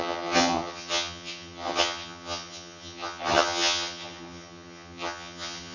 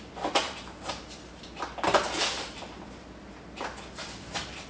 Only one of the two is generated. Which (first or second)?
first